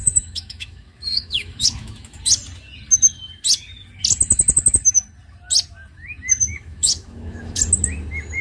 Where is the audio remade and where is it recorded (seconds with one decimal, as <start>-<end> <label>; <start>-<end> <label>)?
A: 0.0-2.2 remade; 2.2-6.5 recorded; 6.5-7.6 remade; 7.6-8.4 recorded